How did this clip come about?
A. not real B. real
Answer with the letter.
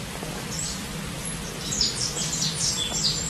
B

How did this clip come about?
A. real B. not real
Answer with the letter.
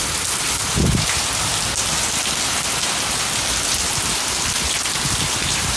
A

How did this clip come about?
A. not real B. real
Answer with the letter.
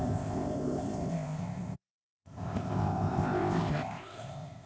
A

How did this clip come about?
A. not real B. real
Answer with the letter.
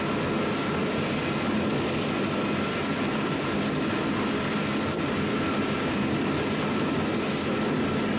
B